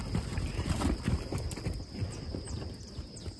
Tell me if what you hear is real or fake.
real